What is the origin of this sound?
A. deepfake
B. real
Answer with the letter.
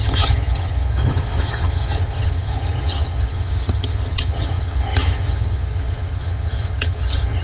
A